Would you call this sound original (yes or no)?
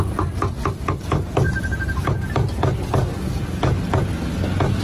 yes